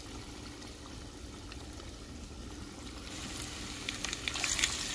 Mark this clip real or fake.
real